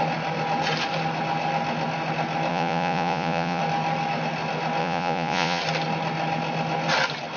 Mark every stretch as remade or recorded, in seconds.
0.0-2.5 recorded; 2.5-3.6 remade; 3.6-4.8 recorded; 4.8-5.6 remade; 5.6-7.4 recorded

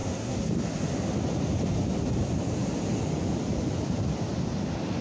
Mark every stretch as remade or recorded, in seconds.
0.0-0.5 remade; 0.5-5.0 recorded